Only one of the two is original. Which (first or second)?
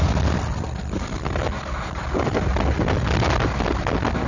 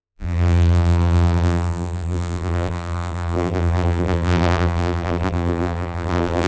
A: first